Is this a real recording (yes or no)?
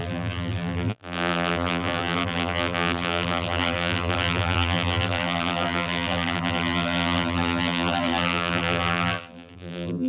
no